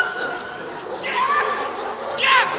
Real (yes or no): no